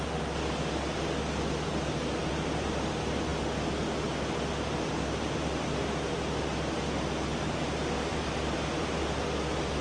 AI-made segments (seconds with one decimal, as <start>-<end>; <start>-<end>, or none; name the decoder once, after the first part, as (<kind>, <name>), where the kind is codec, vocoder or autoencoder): 2.2-2.9 (vocoder, BigVGAN v2); 8.1-9.8